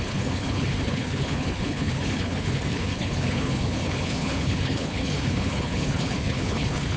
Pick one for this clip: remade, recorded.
remade